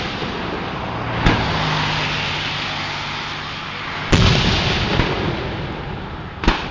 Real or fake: real